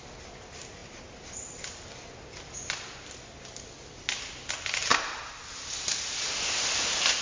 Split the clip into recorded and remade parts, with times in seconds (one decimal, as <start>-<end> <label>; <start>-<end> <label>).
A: 0.0-7.2 recorded